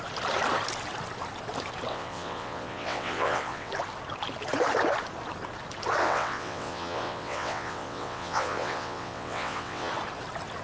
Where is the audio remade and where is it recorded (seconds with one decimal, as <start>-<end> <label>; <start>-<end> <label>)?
0.0-1.9 recorded; 1.9-3.7 remade; 3.7-6.0 recorded; 6.0-9.9 remade; 9.9-10.6 recorded